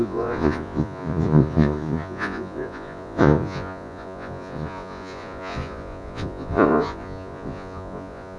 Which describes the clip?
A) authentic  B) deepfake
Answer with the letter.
B